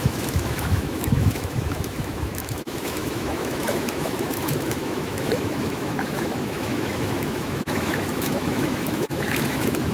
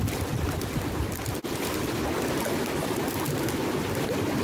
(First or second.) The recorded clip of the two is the second